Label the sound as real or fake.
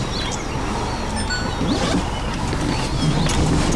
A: real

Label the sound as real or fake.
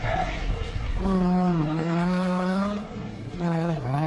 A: fake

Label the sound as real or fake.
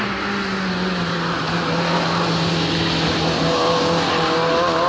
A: real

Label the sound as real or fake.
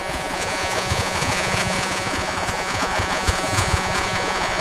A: fake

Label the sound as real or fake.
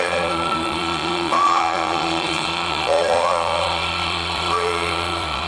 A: fake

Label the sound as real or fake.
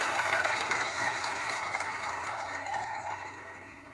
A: fake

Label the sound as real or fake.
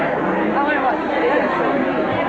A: real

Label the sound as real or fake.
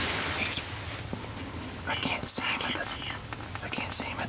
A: real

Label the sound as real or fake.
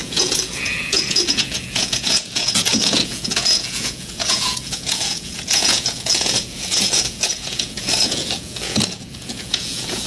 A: fake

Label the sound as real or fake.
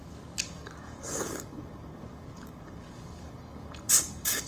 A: fake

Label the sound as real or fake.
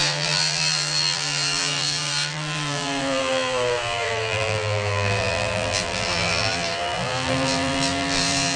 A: fake